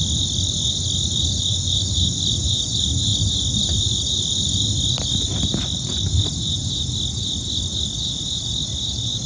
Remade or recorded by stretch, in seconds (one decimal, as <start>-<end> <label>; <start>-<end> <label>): 0.0-9.3 recorded